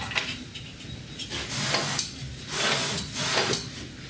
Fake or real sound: real